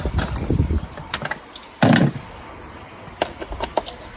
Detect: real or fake real